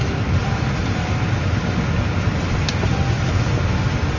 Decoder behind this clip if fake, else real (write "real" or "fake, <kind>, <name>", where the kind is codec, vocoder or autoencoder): real